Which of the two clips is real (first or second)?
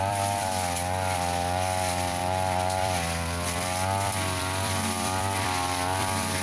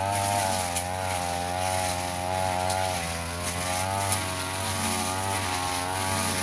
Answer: second